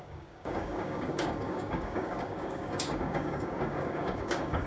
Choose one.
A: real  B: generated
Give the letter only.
B